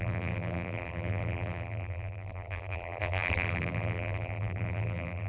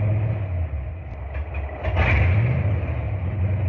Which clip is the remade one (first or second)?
first